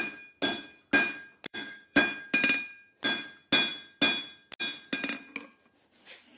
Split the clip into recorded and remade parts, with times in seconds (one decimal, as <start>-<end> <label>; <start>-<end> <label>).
0.0-1.5 recorded; 1.5-2.0 remade; 2.0-6.4 recorded